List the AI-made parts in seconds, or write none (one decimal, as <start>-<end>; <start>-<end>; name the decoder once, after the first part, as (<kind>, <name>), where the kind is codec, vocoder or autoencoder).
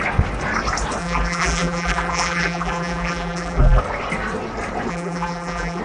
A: 1.0-3.8 (vocoder, BigVGAN v2); 4.9-5.8